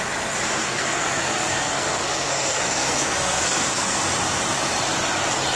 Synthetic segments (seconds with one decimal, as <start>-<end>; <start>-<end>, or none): 0.6-4.0